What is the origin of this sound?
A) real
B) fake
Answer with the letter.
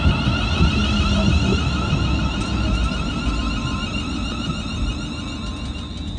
A